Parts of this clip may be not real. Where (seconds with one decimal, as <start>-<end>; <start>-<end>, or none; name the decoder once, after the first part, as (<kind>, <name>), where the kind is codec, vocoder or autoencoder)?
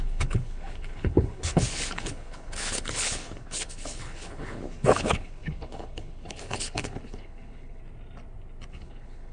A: 0.0-7.8 (codec, HILCodec); 8.7-9.3